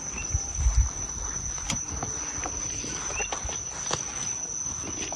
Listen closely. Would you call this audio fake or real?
real